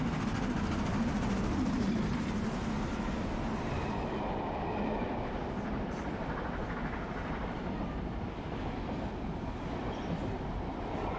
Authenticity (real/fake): real